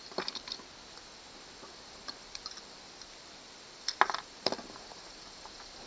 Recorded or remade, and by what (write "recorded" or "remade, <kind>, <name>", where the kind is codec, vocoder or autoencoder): remade, vocoder, BigVGAN v2